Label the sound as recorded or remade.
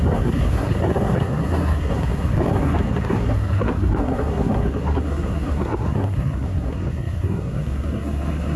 remade